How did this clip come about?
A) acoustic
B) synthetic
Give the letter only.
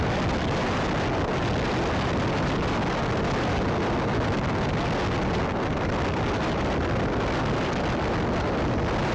A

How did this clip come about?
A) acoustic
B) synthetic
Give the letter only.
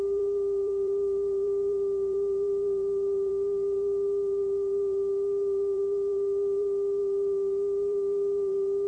B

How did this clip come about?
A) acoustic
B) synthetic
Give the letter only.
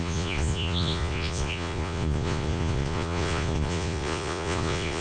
B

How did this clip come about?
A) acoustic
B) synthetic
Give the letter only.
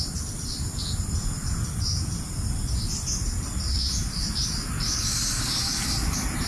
A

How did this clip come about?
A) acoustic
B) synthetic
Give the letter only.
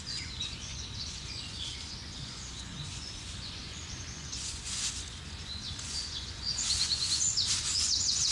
B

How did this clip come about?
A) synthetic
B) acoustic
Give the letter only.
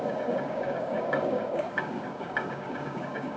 A